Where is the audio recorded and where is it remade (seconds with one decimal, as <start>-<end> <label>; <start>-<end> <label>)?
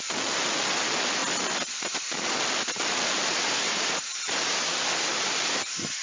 0.0-6.0 recorded